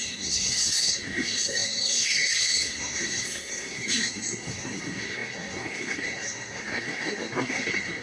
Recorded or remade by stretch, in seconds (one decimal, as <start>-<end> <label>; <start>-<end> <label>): 0.0-8.0 remade

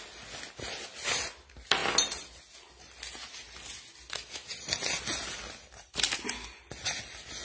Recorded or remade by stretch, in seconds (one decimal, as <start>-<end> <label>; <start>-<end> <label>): 0.0-7.4 recorded